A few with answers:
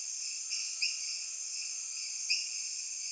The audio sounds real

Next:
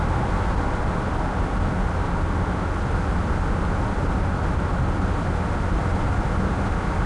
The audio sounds real